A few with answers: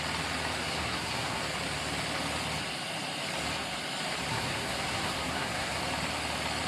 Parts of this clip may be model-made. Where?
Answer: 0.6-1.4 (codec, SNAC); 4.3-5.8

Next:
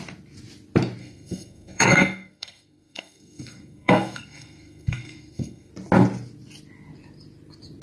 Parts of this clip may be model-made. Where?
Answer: 1.0-5.7 (codec, SNAC)

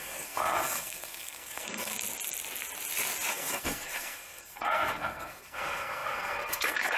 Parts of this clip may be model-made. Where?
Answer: 0.0-1.9 (codec, SNAC); 3.3-7.0